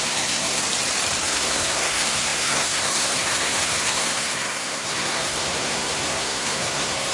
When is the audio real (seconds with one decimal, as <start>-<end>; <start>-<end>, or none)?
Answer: 0.6-1.2